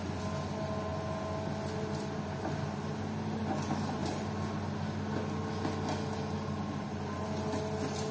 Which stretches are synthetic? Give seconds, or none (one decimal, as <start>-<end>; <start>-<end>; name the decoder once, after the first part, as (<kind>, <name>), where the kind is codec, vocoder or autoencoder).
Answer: none